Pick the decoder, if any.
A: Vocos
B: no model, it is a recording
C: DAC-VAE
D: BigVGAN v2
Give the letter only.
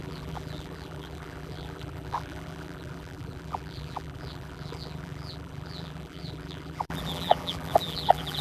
D